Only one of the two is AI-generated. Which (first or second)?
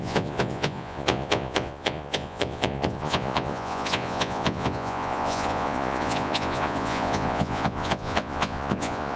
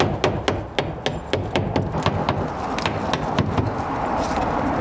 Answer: first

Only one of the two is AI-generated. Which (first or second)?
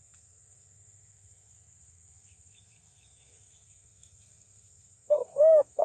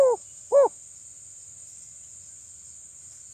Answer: first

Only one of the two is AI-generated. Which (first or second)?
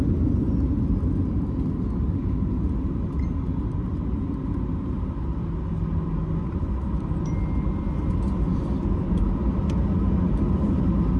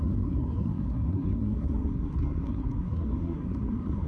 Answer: second